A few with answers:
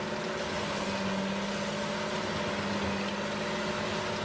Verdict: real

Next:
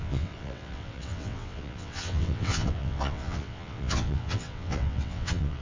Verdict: fake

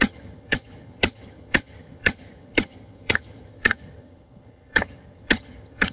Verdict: fake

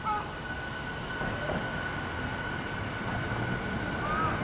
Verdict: real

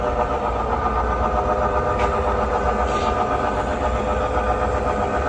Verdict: real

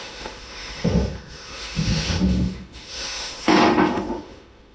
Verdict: fake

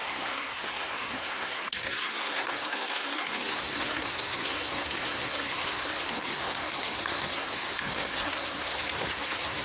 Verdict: fake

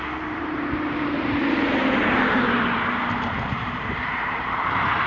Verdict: fake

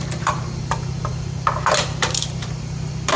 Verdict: fake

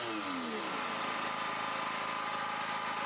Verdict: real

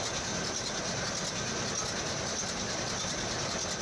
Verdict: real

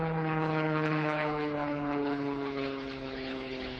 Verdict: fake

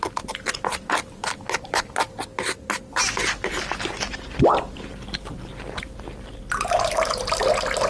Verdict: real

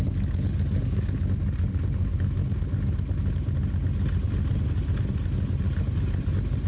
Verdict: real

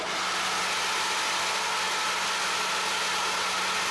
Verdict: real